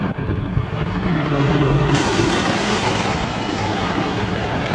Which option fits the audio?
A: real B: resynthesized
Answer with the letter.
B